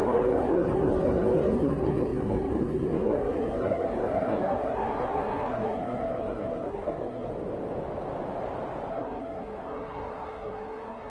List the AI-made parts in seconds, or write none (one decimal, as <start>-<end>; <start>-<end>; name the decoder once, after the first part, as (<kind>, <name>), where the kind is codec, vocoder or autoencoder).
0.0-7.3 (codec, SNAC); 8.9-11.1